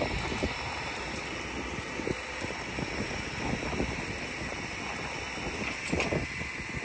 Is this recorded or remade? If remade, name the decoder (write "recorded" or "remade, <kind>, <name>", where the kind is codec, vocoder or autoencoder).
recorded